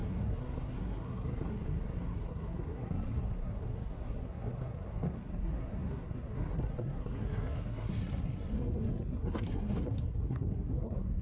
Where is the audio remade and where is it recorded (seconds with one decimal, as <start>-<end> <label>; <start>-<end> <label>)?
0.0-11.2 remade